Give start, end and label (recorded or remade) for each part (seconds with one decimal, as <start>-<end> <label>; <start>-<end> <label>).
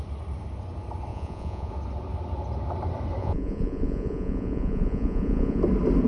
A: 0.0-1.1 recorded; 1.1-1.7 remade; 1.7-3.2 recorded; 3.2-5.6 remade; 5.6-6.1 recorded